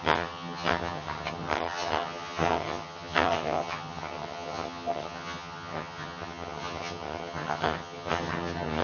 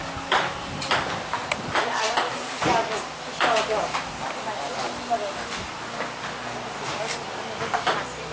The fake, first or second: first